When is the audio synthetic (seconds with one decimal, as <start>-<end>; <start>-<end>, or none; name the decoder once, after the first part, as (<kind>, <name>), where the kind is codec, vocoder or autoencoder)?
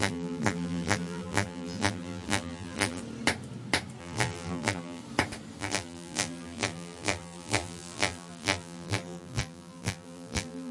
0.0-3.0 (vocoder, BigVGAN v2); 4.0-5.0; 5.6-10.7